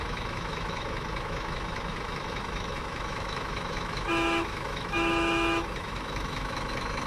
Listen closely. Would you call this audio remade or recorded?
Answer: remade